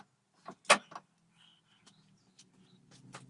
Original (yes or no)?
yes